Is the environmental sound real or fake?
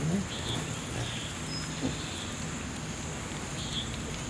real